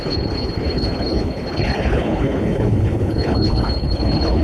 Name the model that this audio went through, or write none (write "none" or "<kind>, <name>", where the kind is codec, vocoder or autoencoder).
codec, HILCodec